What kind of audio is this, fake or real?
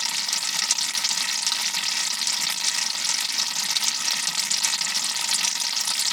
real